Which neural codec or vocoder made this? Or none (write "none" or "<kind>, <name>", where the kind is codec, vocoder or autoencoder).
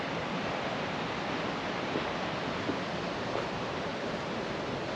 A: none